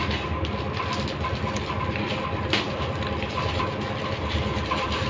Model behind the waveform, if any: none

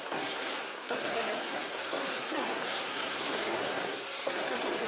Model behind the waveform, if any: codec, SNAC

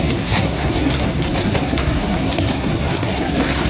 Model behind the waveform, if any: codec, SNAC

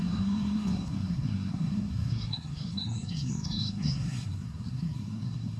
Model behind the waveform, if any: codec, SNAC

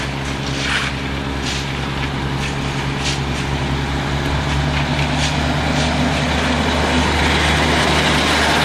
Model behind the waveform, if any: none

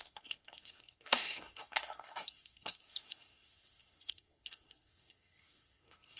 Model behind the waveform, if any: codec, SNAC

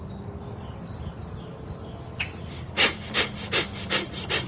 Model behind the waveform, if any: none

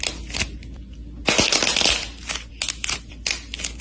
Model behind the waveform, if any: none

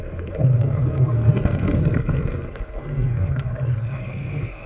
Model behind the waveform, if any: codec, SNAC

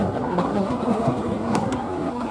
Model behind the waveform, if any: codec, SNAC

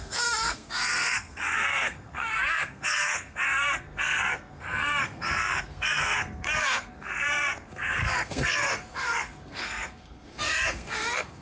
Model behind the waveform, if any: codec, SNAC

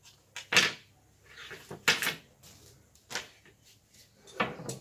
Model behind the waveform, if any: none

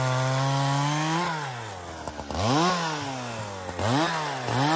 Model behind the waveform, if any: none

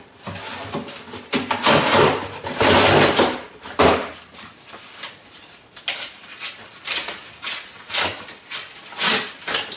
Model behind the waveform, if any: none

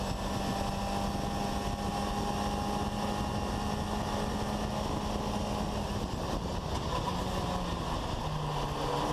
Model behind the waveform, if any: none